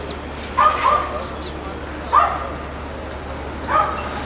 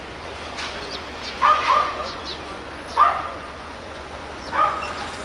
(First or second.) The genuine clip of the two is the first